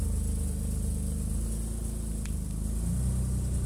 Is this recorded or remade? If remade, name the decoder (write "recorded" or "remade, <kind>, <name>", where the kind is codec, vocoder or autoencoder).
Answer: recorded